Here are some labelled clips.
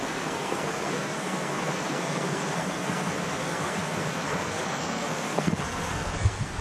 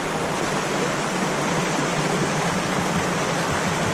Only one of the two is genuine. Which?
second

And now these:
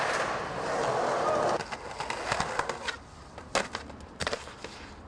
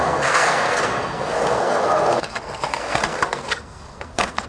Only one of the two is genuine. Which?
first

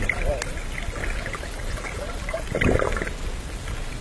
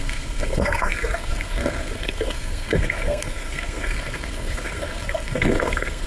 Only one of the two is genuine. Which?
first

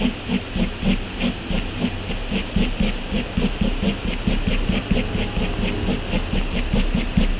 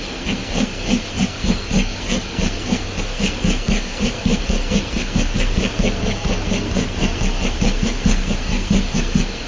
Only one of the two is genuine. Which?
first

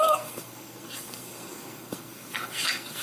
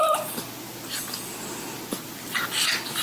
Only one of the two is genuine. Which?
second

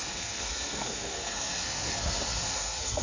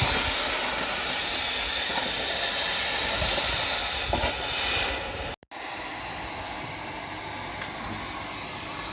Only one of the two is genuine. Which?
second